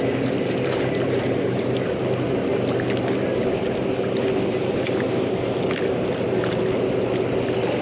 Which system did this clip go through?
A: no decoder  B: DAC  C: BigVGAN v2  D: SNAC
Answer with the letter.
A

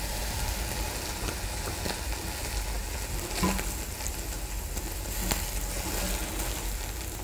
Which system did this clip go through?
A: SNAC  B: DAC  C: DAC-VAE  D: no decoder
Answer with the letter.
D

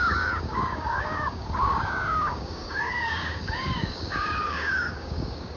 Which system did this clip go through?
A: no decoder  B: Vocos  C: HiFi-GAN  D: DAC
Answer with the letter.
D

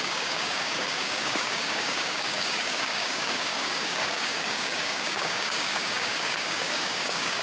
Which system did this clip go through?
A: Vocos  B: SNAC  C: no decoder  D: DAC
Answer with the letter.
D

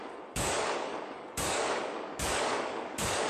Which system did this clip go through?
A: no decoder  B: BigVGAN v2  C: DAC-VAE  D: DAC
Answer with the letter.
D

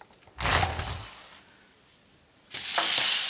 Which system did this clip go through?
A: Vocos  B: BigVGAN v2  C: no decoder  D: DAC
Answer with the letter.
C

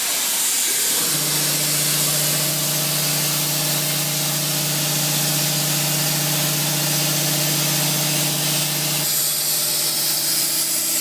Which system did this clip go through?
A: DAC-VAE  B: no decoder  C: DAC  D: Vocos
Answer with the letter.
B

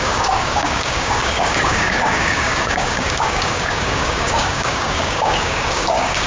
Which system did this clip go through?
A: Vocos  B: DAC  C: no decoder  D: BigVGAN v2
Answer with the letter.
B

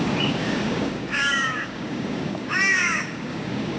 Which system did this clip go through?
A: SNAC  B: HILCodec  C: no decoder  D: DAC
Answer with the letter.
D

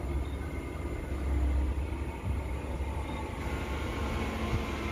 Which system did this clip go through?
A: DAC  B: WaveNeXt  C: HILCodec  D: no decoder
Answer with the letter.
D